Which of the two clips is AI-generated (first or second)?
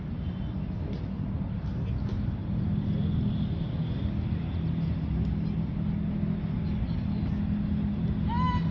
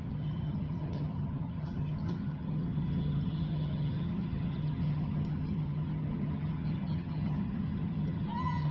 second